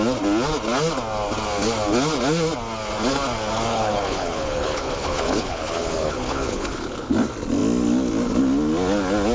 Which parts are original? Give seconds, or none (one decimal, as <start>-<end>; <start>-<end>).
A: 0.0-3.7; 7.1-9.3